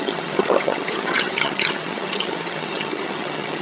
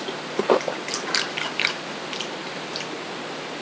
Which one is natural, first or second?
second